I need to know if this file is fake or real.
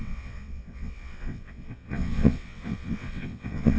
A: fake